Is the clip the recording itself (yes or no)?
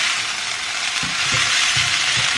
yes